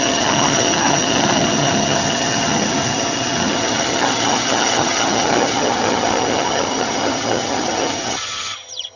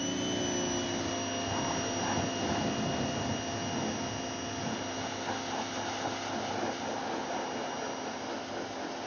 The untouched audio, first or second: second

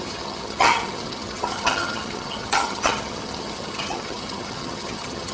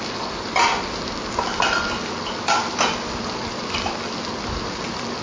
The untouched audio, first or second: second